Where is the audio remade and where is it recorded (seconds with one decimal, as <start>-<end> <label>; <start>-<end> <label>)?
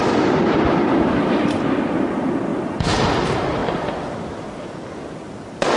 0.0-5.8 recorded